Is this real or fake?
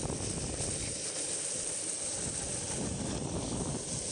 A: real